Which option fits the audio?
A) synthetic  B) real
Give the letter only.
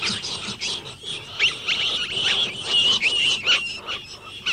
B